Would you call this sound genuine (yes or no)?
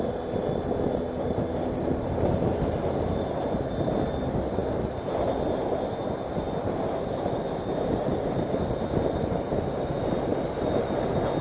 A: yes